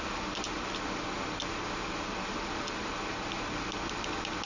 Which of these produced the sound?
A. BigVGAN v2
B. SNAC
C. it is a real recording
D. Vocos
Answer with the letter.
C